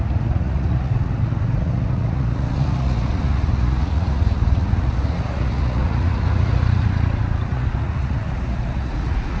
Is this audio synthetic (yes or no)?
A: yes